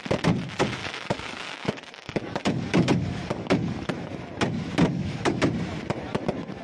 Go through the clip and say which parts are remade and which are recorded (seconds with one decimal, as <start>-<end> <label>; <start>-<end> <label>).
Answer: 0.0-0.8 recorded; 0.8-3.9 remade; 3.9-4.9 recorded; 4.9-5.4 remade; 5.4-6.6 recorded